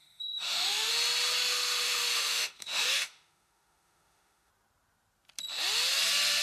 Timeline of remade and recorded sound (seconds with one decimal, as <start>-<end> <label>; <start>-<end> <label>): 0.0-0.9 remade; 0.9-1.4 recorded; 1.4-4.5 remade; 4.5-6.4 recorded